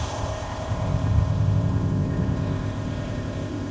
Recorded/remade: remade